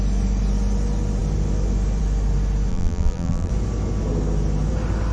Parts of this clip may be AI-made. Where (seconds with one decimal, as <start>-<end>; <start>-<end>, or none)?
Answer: 2.7-3.5